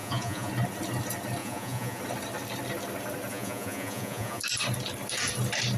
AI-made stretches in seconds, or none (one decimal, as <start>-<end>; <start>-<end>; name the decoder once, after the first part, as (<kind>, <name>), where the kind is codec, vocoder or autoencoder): 0.0-0.5 (vocoder, Vocos); 1.4-2.0; 3.3-4.4